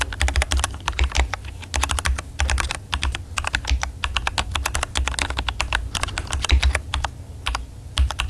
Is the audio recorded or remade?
recorded